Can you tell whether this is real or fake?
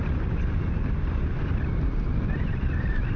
real